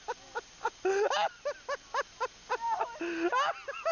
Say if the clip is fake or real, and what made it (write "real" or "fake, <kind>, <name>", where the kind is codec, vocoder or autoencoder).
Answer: real